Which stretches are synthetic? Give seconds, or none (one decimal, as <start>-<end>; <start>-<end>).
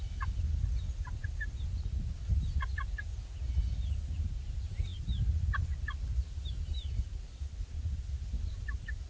none